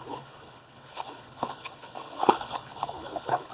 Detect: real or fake fake